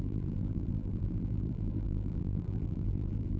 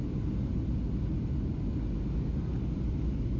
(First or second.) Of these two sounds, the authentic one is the second